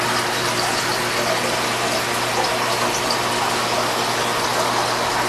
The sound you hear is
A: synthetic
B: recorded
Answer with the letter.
B